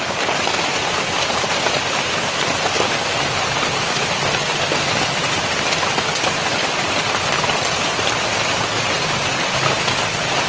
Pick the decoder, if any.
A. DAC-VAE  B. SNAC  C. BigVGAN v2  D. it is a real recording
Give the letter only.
D